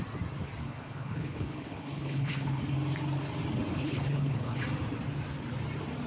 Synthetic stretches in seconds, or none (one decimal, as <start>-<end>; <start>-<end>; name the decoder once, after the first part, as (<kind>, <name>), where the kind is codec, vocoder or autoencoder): 0.6-2.6 (codec, HILCodec); 3.7-4.6